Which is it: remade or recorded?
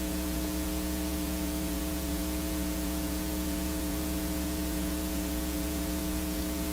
remade